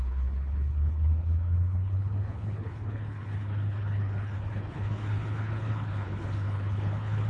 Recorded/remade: remade